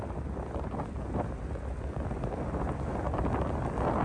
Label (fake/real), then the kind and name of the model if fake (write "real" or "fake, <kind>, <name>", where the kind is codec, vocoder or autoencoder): real